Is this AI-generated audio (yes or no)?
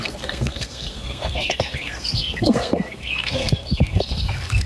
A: yes